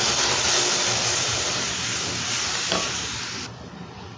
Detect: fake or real real